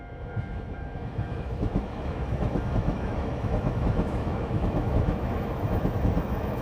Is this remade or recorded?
remade